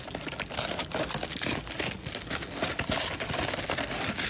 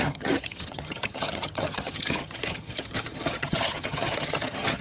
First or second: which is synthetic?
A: second